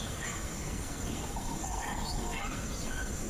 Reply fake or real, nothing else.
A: fake